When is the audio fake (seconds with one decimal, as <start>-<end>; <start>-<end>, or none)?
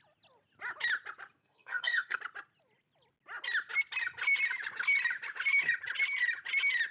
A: 1.4-2.2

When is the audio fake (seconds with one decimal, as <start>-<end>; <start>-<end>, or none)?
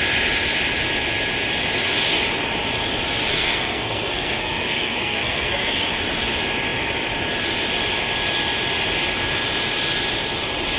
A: 3.2-5.9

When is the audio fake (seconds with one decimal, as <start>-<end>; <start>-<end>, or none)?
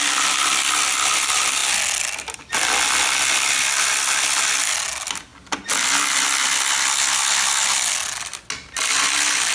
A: none